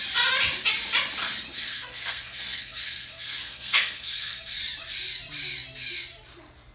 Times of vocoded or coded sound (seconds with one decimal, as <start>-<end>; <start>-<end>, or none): 1.5-4.6